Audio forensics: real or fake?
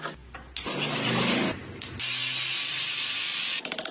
real